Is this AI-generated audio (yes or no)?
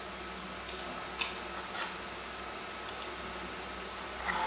no